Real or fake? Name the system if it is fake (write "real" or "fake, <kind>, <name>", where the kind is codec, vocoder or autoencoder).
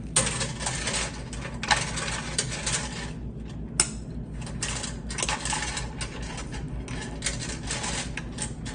real